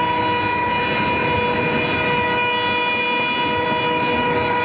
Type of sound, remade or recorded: recorded